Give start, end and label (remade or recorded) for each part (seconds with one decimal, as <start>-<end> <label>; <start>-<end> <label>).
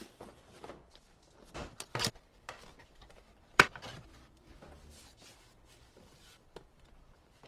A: 0.0-4.5 remade; 4.5-5.0 recorded; 5.0-7.5 remade